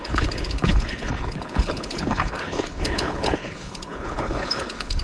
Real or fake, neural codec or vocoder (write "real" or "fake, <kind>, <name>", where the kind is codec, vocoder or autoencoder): fake, codec, HILCodec